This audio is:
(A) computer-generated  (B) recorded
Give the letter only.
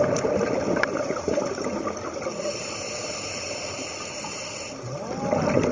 B